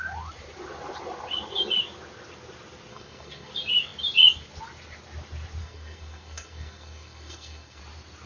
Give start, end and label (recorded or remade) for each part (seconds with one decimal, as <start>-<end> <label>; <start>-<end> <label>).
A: 0.0-2.9 recorded; 2.9-3.5 remade; 3.5-5.6 recorded; 5.6-7.8 remade; 7.8-8.3 recorded